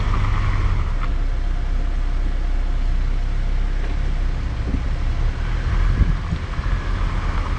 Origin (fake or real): real